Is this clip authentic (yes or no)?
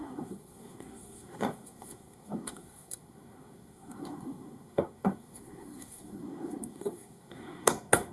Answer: no